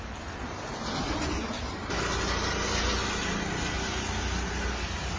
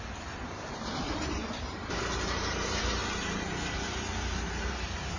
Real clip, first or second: first